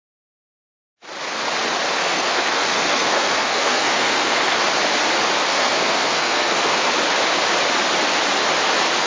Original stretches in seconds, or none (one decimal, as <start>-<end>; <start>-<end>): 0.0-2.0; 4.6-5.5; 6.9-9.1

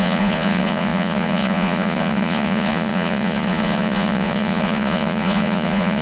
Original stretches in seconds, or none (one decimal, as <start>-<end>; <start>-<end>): none

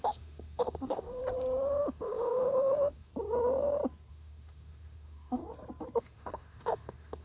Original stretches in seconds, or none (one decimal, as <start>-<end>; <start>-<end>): 1.2-1.8; 3.1-4.1; 5.4-6.0

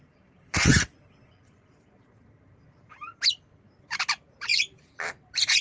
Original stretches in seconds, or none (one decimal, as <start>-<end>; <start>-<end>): 0.7-4.1

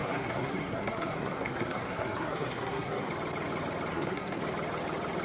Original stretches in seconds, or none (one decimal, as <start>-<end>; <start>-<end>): 3.1-3.9; 4.4-5.2

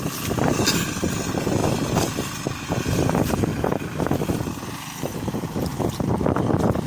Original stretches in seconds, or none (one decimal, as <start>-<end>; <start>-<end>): 0.0-1.6; 2.7-5.7; 6.2-6.9

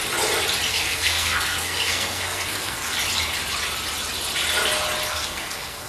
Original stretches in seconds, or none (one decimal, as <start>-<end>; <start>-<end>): 0.0-0.7; 2.9-5.1